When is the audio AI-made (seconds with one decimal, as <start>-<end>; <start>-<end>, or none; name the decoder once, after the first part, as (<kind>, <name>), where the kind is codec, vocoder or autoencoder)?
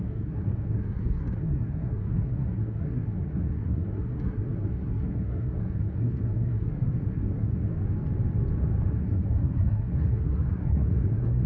0.0-7.7 (codec, SNAC); 8.9-11.5